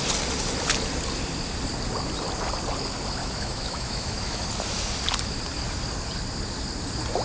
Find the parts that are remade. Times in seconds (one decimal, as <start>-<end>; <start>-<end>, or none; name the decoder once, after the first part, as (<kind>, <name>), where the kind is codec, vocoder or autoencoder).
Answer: 3.2-4.4 (autoencoder, DAC-VAE)